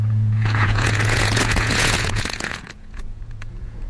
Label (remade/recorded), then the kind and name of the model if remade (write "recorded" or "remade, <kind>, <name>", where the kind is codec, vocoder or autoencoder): remade, vocoder, Vocos